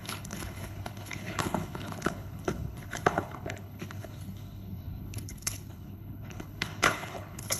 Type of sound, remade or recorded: remade